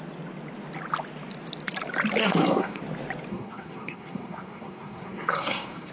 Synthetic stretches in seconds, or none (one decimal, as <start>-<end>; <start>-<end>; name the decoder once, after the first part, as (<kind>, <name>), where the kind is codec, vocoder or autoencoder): 2.2-2.8 (codec, SNAC); 3.3-5.9